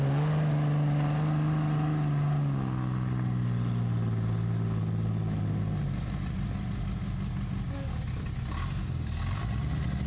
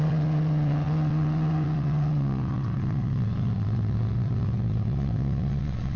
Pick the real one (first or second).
first